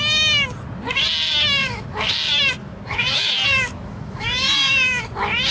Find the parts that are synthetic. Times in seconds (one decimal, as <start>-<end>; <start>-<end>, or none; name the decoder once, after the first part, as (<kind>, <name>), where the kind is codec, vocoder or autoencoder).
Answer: 1.6-2.1 (autoencoder, DAC-VAE); 2.6-5.0